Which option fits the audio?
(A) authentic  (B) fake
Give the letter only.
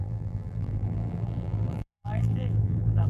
B